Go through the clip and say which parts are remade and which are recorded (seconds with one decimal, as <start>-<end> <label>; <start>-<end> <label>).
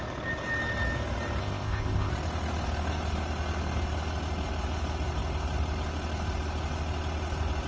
0.0-1.4 recorded; 1.4-2.1 remade; 2.1-7.7 recorded